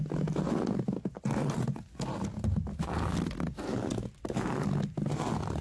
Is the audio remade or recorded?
recorded